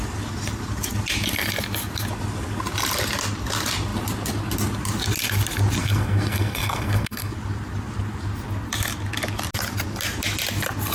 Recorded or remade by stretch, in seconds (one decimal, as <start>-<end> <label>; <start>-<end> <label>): 0.0-5.8 recorded; 5.8-7.3 remade; 7.3-10.9 recorded